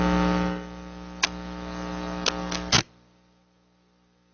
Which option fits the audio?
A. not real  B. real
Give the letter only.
B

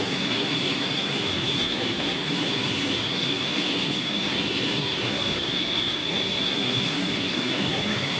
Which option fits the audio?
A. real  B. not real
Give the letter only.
B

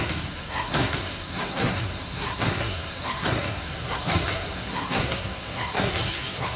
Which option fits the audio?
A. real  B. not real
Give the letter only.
B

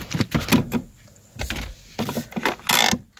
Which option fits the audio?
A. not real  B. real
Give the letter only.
B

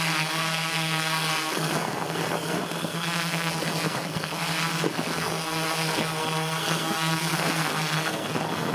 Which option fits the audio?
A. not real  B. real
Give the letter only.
A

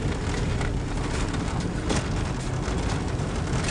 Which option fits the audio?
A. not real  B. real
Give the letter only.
B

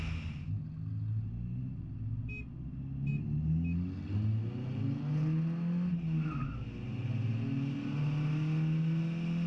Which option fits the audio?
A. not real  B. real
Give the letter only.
B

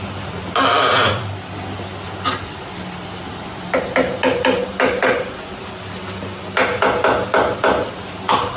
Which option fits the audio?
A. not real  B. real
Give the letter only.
B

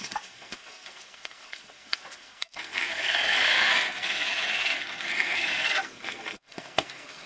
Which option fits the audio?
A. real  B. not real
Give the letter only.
B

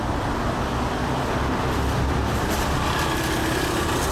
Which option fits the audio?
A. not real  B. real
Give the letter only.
B